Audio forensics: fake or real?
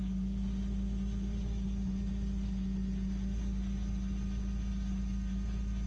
real